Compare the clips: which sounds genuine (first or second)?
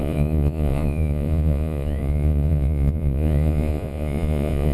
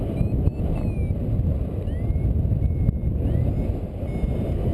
second